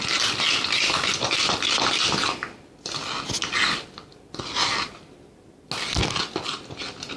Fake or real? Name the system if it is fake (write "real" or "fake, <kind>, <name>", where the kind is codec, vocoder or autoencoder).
real